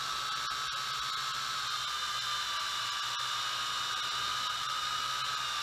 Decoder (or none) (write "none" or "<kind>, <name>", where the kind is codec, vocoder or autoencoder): none